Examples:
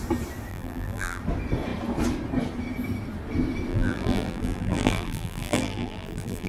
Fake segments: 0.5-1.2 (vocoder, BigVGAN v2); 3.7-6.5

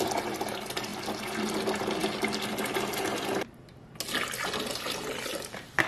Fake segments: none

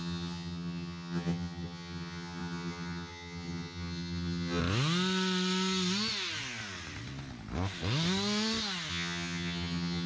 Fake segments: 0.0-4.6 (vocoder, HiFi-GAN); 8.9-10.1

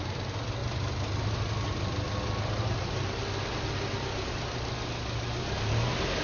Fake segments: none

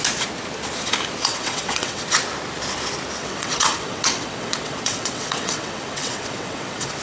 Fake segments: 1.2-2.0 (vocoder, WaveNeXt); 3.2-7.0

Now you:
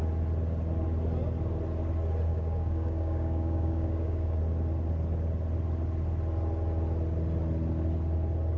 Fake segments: 2.3-4.4 (codec, DAC)

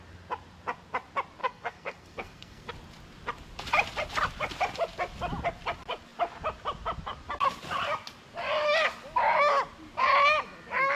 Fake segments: 1.4-2.7 (codec, SNAC)

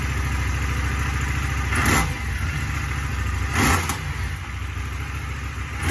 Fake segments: none